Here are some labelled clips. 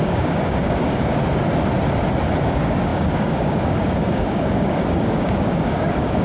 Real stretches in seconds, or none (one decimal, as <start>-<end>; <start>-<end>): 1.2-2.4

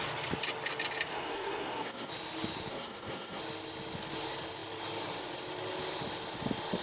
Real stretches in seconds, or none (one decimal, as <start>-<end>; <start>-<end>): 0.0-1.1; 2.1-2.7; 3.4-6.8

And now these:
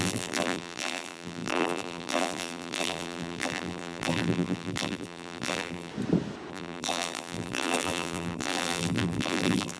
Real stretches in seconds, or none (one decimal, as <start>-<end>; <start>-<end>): 5.9-6.5

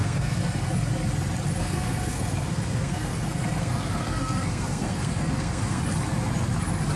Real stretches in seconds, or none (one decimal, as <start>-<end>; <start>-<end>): 0.7-1.6; 5.8-7.0

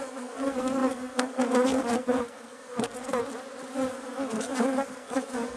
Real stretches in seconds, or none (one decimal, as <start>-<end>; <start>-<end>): 3.2-3.9

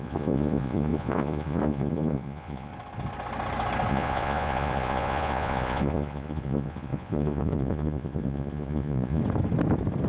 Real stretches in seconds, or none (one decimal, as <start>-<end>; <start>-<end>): 2.7-3.9; 9.2-10.1